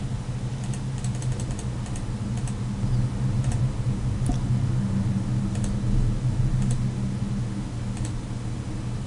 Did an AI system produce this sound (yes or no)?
no